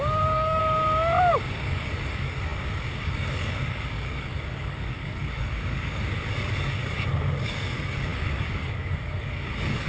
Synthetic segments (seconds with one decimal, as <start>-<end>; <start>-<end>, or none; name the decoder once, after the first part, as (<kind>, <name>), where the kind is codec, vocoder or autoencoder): 0.0-0.6 (codec, DAC); 1.3-9.9